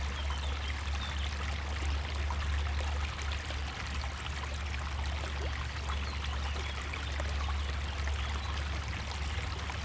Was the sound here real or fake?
real